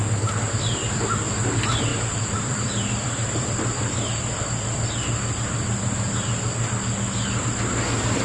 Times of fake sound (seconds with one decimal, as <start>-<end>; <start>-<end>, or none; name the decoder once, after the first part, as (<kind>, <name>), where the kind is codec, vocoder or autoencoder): 0.8-1.3 (vocoder, BigVGAN v2); 1.9-4.4